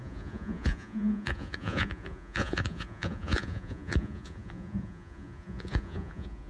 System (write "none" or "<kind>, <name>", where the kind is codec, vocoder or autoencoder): vocoder, Vocos